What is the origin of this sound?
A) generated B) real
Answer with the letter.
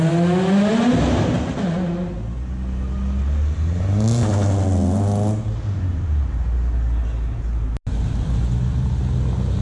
B